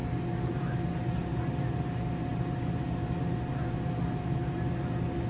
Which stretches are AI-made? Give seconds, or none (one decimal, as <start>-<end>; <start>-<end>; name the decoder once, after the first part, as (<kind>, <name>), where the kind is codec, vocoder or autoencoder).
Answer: none